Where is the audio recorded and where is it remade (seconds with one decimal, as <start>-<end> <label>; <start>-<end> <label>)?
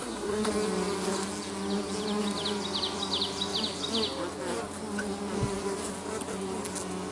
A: 0.0-0.5 remade; 0.5-7.1 recorded